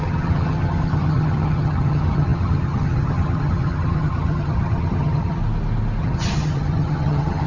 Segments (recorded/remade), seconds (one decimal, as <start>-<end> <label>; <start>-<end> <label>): 0.0-5.4 remade; 5.4-6.0 recorded; 6.0-7.5 remade